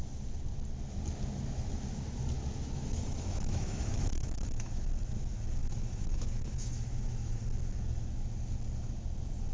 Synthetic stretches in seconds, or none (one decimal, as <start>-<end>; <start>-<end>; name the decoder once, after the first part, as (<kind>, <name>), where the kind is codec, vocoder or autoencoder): 2.6-4.9 (autoencoder, DAC-VAE); 5.6-7.4